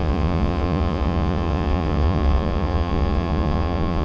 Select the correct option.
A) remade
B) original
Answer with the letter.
A